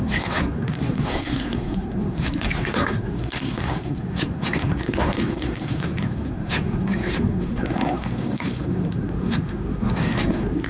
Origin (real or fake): fake